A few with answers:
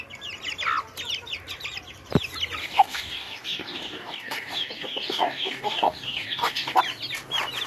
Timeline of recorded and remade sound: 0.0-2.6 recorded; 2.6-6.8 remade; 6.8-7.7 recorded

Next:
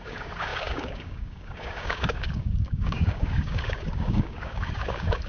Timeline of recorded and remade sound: 0.0-5.3 remade

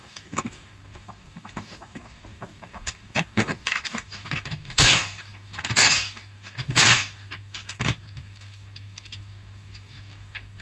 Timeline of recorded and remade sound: 0.0-10.6 remade

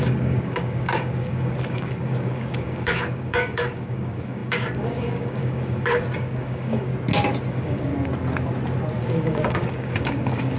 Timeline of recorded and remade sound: 0.0-6.9 remade; 6.9-7.5 recorded; 7.5-7.9 remade; 7.9-9.0 recorded; 9.0-10.6 remade

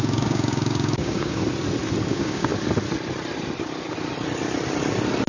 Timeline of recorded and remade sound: 0.0-1.4 remade; 1.4-2.1 recorded; 2.1-2.5 remade; 2.5-5.3 recorded

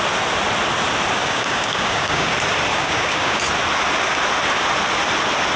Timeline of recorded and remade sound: 0.0-1.2 recorded; 1.2-2.3 remade; 2.3-2.7 recorded; 2.7-3.4 remade; 3.4-5.6 recorded